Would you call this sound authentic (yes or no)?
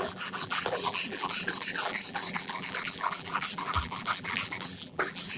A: no